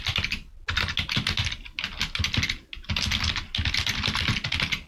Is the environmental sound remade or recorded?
recorded